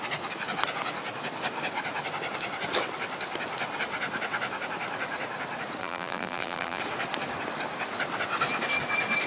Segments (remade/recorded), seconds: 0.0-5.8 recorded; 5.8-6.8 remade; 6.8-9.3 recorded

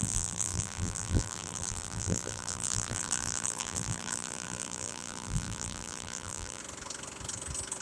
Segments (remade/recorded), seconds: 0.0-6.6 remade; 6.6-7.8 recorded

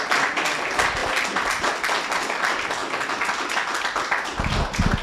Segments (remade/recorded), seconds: 0.0-2.8 recorded; 2.8-4.5 remade; 4.5-5.0 recorded

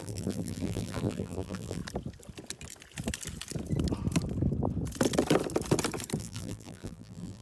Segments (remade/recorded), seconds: 0.0-1.8 remade; 1.8-6.2 recorded; 6.2-7.4 remade

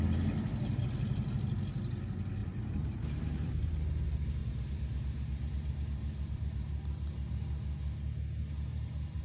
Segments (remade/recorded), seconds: 0.0-2.4 recorded; 2.4-3.7 remade; 3.7-4.4 recorded; 4.4-7.3 remade; 7.3-8.7 recorded; 8.7-9.2 remade

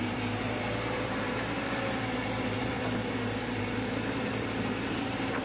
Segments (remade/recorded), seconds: 0.0-5.4 remade

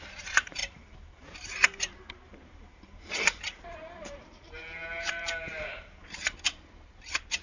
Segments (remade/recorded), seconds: 0.0-7.4 remade